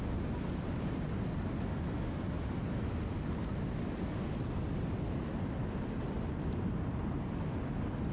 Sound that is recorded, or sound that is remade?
recorded